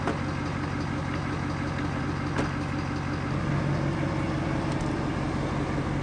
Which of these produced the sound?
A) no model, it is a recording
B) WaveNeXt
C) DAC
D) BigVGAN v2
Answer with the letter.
A